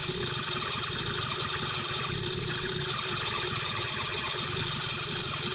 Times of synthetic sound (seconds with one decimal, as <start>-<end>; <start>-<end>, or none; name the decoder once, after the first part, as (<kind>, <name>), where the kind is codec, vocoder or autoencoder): none